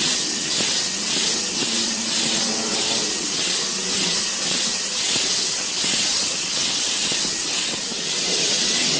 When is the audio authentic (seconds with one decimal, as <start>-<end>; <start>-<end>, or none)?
none